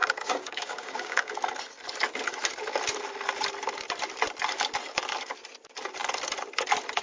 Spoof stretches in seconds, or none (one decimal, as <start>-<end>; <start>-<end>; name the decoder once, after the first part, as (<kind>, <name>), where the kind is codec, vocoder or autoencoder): 0.0-1.3 (codec, DAC)